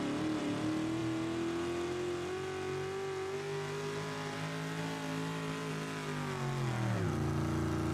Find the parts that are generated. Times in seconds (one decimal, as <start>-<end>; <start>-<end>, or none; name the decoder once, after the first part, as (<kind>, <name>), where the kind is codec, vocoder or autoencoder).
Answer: none